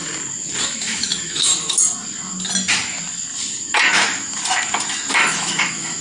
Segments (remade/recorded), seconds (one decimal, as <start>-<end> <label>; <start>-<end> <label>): 0.0-0.6 recorded; 0.6-1.5 remade; 1.5-5.1 recorded; 5.1-6.0 remade